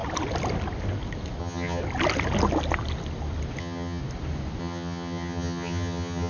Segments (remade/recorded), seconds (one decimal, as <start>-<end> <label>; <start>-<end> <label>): 0.0-1.4 recorded; 1.4-1.8 remade; 1.8-3.6 recorded; 3.6-4.0 remade; 4.0-4.6 recorded; 4.6-6.3 remade